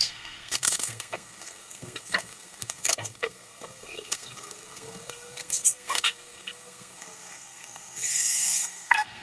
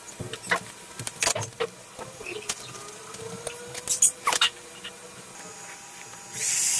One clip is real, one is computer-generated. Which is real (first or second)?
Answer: second